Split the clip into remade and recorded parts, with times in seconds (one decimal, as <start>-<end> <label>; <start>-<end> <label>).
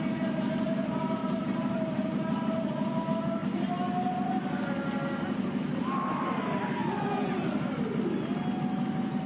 0.0-9.3 recorded